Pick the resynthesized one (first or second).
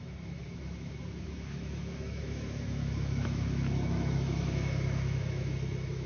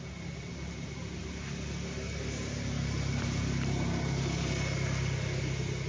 first